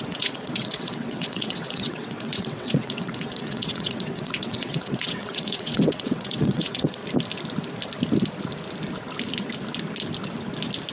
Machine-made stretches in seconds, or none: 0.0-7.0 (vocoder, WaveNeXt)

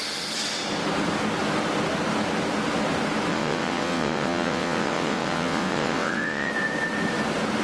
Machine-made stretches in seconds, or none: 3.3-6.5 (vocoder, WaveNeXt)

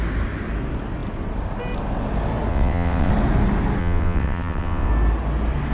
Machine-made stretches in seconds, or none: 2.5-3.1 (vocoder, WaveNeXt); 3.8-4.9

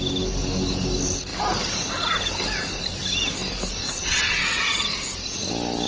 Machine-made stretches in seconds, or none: 3.8-4.6 (vocoder, WaveNeXt)

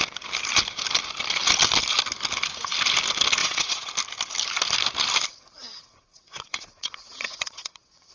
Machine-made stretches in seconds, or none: 3.4-3.9 (vocoder, WaveNeXt); 5.7-8.1